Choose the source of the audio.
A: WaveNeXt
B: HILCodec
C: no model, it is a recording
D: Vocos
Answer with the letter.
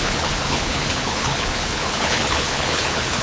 B